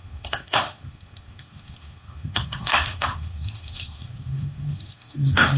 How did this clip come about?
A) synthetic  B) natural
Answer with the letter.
A